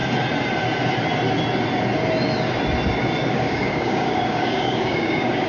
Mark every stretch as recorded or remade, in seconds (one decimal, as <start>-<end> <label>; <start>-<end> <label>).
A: 0.0-3.3 recorded; 3.3-5.5 remade